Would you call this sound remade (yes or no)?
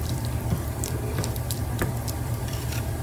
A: yes